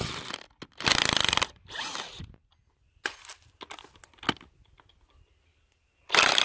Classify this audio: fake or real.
real